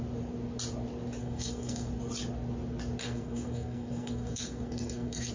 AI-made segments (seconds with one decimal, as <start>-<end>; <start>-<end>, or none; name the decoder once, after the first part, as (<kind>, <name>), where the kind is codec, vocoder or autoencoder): 1.2-1.9 (codec, SNAC); 3.0-5.3

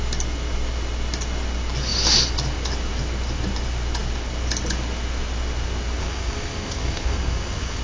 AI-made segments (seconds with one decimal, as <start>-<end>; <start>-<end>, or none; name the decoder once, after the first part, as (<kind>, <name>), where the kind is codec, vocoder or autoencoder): 6.0-7.8 (codec, SNAC)

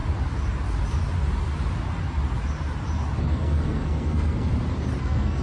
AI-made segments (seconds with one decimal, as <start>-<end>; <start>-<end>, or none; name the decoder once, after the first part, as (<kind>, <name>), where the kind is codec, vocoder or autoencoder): 3.2-4.5 (codec, SNAC); 5.0-5.4

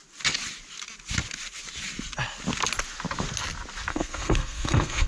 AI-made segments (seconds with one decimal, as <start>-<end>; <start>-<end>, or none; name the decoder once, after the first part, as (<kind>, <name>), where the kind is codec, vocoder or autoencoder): 3.9-5.1 (codec, SNAC)

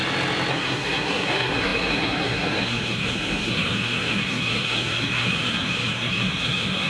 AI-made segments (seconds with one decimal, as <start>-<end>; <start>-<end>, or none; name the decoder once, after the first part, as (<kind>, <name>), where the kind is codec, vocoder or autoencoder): 0.5-6.9 (codec, SNAC)

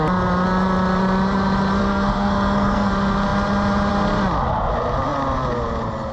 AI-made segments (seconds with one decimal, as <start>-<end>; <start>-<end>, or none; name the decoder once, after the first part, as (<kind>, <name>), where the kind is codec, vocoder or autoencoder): 1.8-2.9 (codec, SNAC)

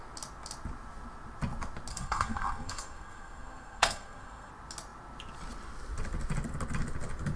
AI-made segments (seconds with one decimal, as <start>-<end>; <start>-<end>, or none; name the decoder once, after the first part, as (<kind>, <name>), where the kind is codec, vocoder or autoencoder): 1.9-4.5 (codec, SNAC)

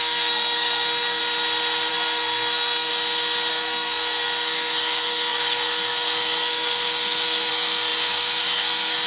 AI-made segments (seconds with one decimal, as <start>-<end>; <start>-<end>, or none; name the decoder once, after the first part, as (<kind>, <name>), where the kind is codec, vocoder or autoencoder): 0.0-1.2 (codec, SNAC); 1.9-2.9; 3.5-9.1